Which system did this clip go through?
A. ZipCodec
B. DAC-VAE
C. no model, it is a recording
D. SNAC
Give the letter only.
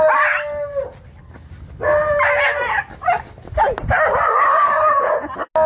C